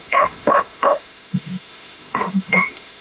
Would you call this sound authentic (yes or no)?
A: no